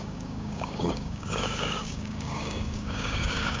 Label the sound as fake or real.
fake